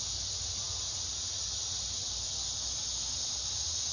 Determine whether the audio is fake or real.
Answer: real